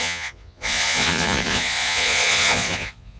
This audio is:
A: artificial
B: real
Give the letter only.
A